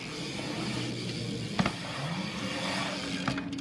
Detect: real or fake real